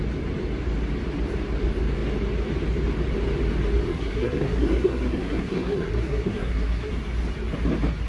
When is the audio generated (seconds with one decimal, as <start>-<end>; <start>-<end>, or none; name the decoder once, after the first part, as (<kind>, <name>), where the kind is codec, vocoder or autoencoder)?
3.9-6.9 (codec, SNAC)

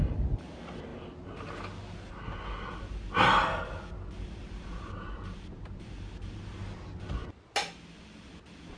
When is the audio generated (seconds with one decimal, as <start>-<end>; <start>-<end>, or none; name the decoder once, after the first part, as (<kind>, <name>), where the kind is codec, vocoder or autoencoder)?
none

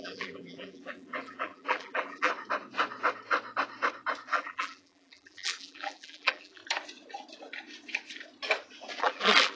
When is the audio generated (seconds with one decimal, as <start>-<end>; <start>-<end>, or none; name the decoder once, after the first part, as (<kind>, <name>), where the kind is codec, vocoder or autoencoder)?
0.0-2.3 (vocoder, BigVGAN v2); 4.3-6.6; 9.0-9.6

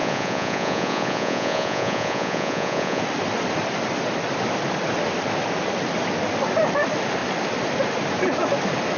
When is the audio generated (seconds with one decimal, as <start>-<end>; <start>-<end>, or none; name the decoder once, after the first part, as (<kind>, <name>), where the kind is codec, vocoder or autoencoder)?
0.0-3.0 (vocoder, Vocos)

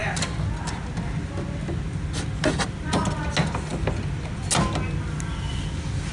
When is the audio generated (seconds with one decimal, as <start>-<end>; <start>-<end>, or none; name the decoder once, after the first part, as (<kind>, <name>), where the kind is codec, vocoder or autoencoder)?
none